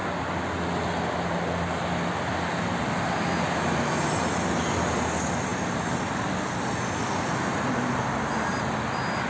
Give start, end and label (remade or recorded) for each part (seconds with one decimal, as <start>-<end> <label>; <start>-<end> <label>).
0.0-9.3 recorded